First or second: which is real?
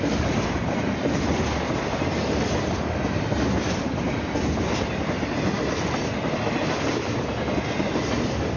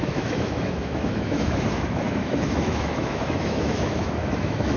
first